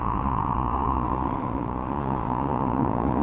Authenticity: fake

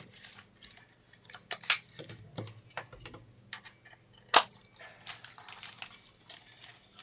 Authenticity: real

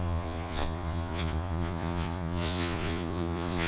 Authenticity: fake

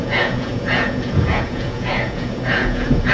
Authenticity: fake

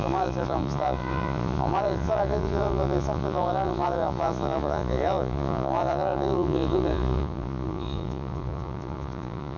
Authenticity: fake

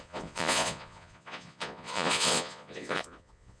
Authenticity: fake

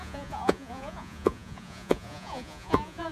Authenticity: fake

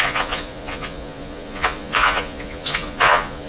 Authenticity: fake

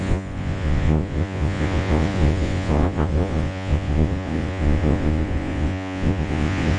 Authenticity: fake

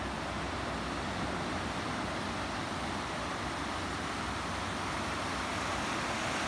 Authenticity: real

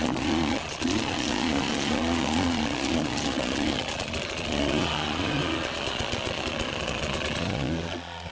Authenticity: fake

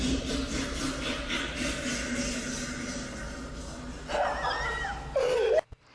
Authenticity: real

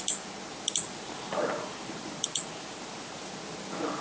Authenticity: real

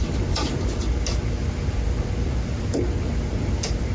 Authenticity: real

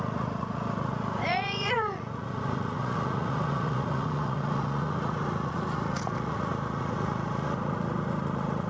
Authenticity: fake